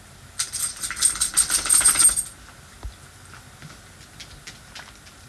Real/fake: real